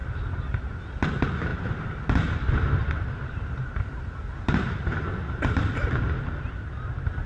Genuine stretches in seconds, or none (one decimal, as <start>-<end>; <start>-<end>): 0.8-1.5; 5.9-7.3